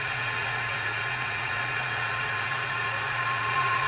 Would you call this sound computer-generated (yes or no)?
yes